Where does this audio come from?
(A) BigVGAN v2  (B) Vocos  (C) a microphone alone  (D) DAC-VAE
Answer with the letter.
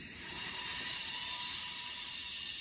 A